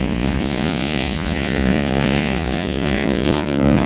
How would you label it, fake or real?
fake